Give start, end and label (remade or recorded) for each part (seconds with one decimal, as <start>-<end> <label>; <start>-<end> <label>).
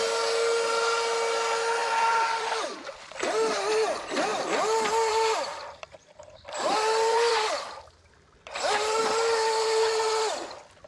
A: 0.0-1.8 recorded; 1.8-3.1 remade; 3.1-5.5 recorded; 5.5-9.0 remade; 9.0-10.9 recorded